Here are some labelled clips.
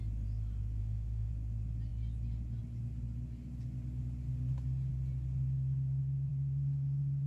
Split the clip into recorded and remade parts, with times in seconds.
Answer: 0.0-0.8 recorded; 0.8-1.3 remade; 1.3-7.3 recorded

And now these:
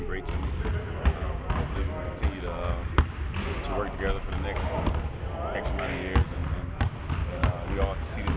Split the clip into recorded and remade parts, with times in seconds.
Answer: 0.0-8.4 recorded

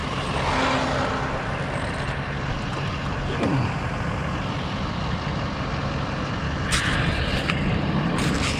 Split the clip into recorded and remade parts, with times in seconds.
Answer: 0.0-8.6 recorded

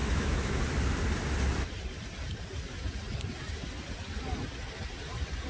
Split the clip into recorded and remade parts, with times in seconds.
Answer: 0.0-0.6 remade; 0.6-5.5 recorded

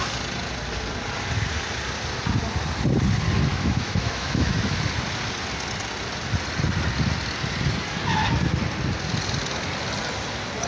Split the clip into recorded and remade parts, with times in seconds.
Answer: 0.0-3.5 recorded; 3.5-4.7 remade; 4.7-10.7 recorded

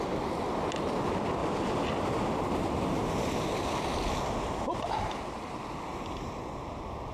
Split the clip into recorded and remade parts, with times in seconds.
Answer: 0.0-7.1 recorded

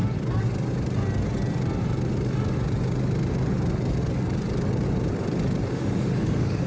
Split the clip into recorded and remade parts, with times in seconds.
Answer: 0.0-5.7 recorded; 5.7-6.7 remade

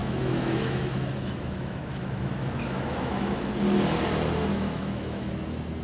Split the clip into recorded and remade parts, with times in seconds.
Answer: 0.0-3.5 remade; 3.5-4.5 recorded; 4.5-5.3 remade; 5.3-5.8 recorded